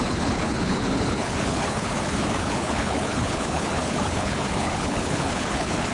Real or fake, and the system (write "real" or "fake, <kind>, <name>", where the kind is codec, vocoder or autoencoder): fake, codec, HILCodec